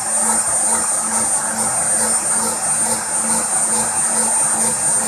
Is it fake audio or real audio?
real